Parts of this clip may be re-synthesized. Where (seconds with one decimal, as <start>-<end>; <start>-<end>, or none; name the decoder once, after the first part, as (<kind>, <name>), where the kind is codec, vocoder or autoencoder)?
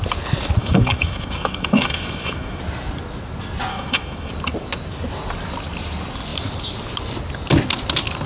0.6-2.6 (autoencoder, DAC-VAE); 3.7-4.3